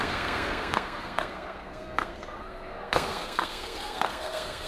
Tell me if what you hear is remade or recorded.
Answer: remade